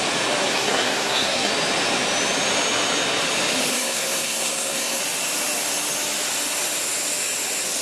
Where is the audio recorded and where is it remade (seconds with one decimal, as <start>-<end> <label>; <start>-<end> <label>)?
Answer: 0.0-0.5 recorded; 0.5-1.5 remade; 1.5-3.7 recorded; 3.7-5.0 remade; 5.0-7.8 recorded